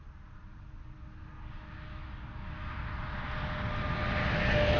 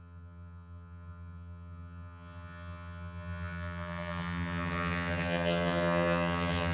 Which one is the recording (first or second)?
first